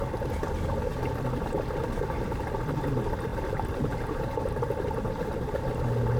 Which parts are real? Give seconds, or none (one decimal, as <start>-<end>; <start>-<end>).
0.0-3.3; 5.8-6.2